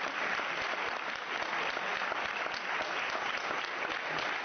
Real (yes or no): yes